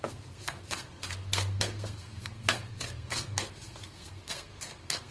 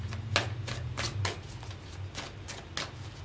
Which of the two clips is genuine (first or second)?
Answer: second